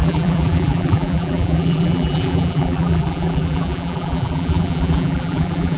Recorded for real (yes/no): no